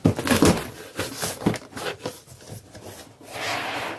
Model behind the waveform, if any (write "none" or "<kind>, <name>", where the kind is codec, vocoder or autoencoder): vocoder, BigVGAN v2